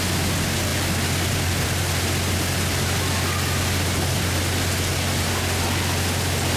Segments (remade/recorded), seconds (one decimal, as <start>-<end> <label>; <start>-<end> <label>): 0.0-6.6 recorded